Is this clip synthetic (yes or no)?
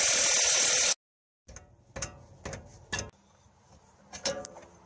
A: no